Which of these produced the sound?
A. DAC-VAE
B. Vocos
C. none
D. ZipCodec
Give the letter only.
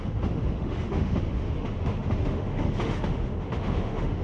A